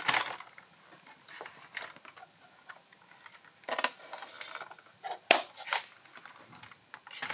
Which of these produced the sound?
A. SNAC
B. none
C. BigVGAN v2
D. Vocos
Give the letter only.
B